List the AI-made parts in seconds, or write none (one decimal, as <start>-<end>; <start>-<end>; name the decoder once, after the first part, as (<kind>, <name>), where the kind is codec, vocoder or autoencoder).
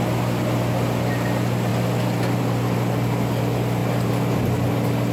3.8-4.4 (vocoder, BigVGAN v2)